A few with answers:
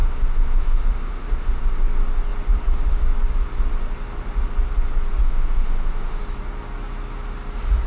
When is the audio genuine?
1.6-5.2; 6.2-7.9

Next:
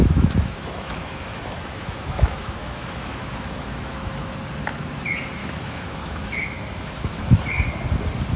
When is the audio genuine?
4.3-5.4; 7.4-8.4

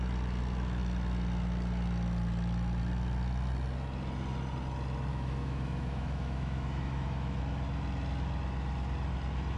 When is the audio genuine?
0.0-5.1; 7.4-9.6

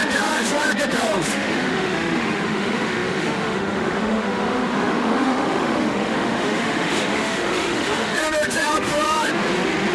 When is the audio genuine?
9.3-9.9

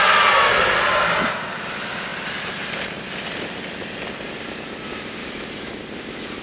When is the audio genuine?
0.0-5.2; 5.8-6.4

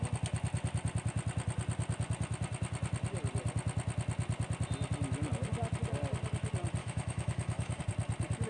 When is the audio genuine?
0.0-6.8; 7.8-8.5